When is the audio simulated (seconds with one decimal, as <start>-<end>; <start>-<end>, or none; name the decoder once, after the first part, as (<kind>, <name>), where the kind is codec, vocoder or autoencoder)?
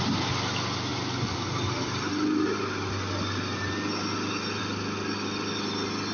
none